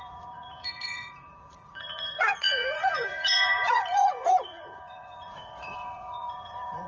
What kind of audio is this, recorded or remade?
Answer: remade